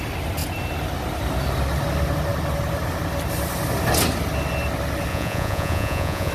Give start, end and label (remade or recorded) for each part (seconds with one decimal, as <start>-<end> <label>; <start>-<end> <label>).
0.0-5.1 recorded; 5.1-6.3 remade